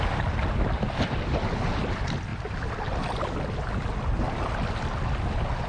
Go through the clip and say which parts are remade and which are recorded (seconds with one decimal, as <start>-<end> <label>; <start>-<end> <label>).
0.0-5.7 recorded

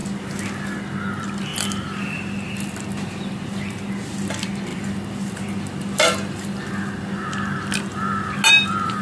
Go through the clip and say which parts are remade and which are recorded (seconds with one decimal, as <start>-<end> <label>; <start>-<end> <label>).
0.0-1.5 recorded; 1.5-2.5 remade; 2.5-9.0 recorded

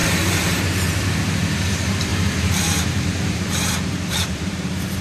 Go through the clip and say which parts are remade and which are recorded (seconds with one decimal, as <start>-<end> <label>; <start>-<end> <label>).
0.0-5.0 remade

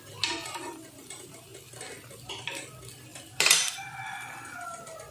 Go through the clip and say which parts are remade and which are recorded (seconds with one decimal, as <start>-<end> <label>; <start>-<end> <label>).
0.0-3.1 recorded; 3.1-3.7 remade; 3.7-5.1 recorded

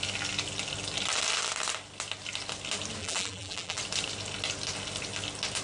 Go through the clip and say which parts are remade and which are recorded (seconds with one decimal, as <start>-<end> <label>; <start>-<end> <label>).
0.0-3.0 recorded; 3.0-3.8 remade; 3.8-5.6 recorded

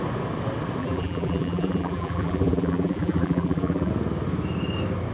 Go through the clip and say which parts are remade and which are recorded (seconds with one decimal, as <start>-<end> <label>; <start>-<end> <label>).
0.0-0.8 recorded; 0.8-3.9 remade; 3.9-5.1 recorded